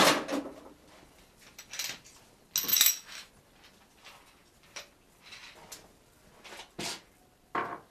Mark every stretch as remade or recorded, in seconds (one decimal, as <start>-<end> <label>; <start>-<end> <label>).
0.0-2.7 recorded; 2.7-3.3 remade; 3.3-7.9 recorded